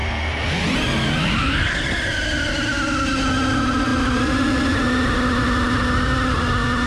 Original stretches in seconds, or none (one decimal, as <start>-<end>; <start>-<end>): 0.0-6.9